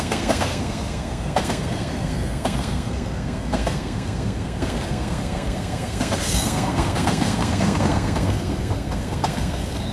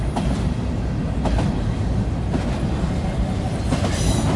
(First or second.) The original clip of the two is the second